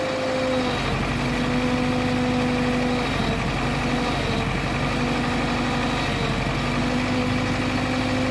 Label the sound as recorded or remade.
recorded